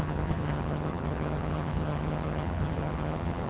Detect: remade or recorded remade